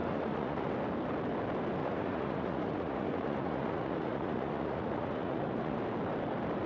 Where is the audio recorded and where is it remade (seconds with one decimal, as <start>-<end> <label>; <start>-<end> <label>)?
0.0-0.7 remade; 0.7-1.8 recorded; 1.8-5.8 remade; 5.8-6.7 recorded